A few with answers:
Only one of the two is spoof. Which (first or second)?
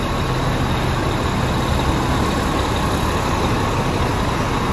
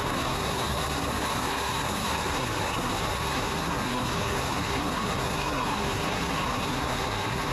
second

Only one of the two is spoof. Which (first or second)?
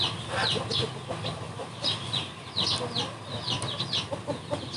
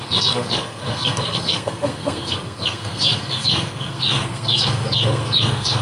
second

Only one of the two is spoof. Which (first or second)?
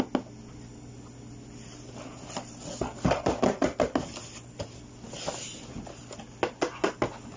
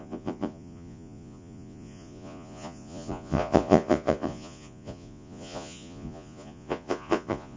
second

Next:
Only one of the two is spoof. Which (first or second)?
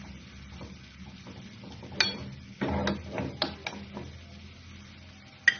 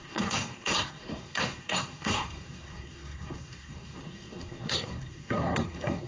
second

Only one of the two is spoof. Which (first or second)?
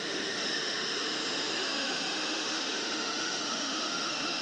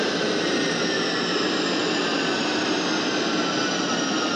first